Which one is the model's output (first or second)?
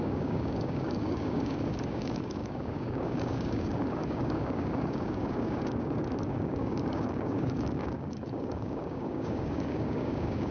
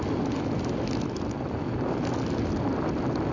first